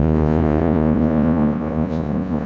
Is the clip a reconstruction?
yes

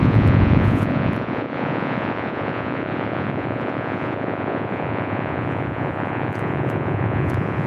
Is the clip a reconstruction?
yes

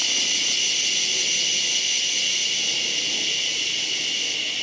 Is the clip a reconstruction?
no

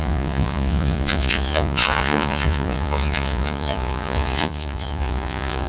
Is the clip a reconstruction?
yes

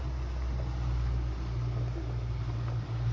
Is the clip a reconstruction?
no